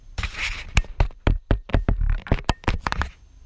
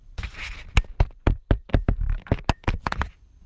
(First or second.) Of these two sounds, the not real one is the second